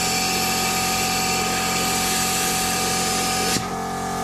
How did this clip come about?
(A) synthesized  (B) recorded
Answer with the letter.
B